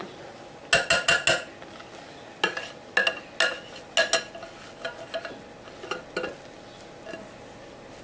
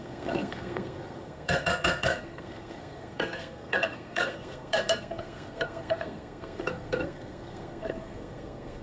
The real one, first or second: first